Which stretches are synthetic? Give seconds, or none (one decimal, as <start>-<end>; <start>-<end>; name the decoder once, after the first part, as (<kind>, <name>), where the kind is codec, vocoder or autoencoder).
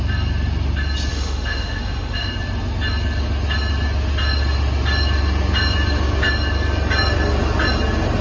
1.1-2.3 (autoencoder, DAC-VAE)